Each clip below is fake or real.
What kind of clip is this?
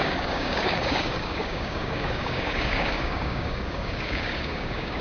fake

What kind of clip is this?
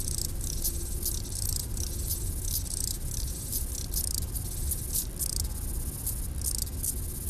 real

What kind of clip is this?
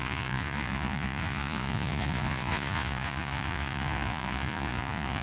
fake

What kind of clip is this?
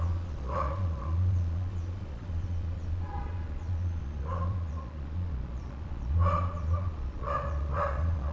fake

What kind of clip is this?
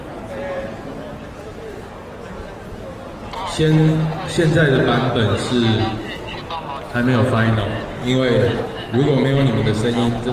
real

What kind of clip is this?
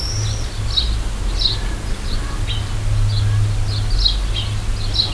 real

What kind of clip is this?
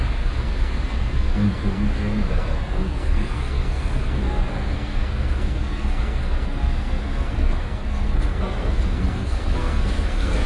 fake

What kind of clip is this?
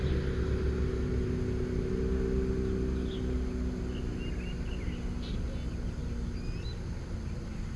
real